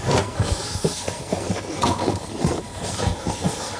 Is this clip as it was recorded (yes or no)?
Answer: no